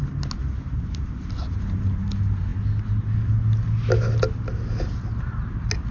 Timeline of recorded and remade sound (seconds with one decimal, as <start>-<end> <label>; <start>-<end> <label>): 0.0-5.9 recorded